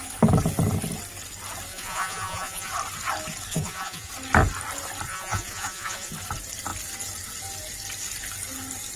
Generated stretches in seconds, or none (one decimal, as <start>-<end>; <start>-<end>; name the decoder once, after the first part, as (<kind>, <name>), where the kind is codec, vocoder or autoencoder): 1.7-2.7 (vocoder, Vocos); 3.5-4.1; 5.1-6.1